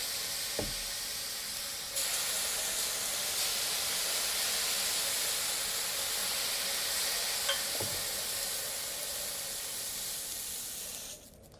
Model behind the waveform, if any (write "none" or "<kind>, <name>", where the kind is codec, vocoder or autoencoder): none